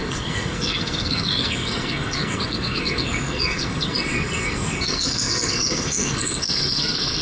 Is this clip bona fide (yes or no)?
no